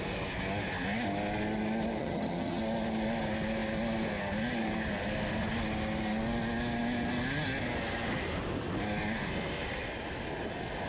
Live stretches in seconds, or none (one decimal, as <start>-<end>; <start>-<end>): 0.0-2.0; 2.6-10.9